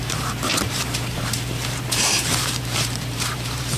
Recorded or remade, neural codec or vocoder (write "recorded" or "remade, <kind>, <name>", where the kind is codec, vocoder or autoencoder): remade, vocoder, BigVGAN v2